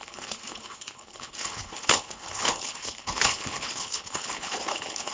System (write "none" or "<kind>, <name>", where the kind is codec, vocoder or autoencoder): codec, HILCodec